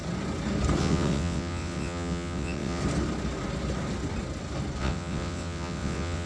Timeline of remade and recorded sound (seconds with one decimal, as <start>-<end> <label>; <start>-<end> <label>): 0.0-0.8 recorded; 0.8-2.8 remade; 2.8-4.8 recorded; 4.8-6.3 remade